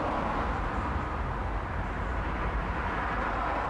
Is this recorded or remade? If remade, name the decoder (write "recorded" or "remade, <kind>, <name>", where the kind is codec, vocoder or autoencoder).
remade, vocoder, BigVGAN v2